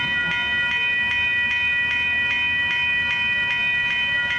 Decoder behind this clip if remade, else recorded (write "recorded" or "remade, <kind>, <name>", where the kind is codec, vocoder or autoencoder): recorded